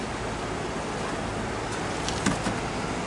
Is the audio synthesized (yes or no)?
no